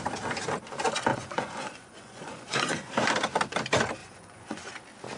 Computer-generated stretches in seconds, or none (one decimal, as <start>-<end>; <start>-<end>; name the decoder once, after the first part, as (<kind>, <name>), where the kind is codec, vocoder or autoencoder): 1.1-2.9 (vocoder, Vocos); 4.0-4.7